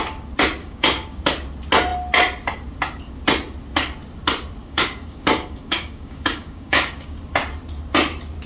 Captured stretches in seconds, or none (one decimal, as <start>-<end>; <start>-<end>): 0.0-0.6; 1.2-4.6; 7.2-8.5